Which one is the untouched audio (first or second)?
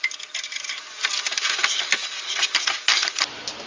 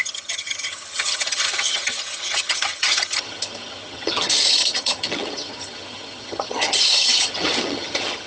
first